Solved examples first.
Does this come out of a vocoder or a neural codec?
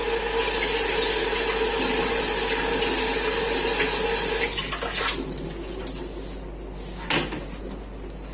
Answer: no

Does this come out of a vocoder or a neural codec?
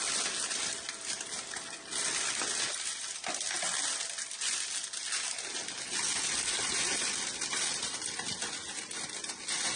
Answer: no